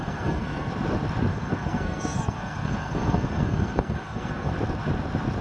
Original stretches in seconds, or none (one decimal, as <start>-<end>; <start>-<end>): 0.7-1.3; 4.5-5.4